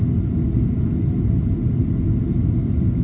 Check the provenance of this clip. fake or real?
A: real